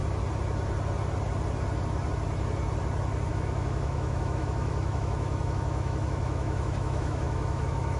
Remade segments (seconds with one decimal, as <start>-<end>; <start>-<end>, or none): 3.3-8.0